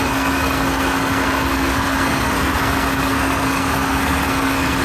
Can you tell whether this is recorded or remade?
remade